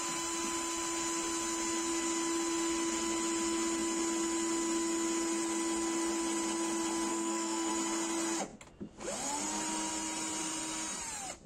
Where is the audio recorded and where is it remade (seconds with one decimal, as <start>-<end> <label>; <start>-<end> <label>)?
0.0-7.1 recorded; 7.1-7.7 remade; 7.7-11.5 recorded